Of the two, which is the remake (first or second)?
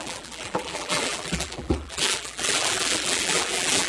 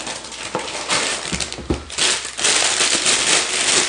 first